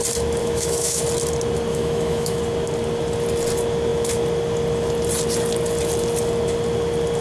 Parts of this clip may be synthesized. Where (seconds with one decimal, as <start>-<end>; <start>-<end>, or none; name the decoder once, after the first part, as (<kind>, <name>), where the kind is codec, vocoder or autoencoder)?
0.4-1.0 (autoencoder, DAC-VAE); 1.7-2.4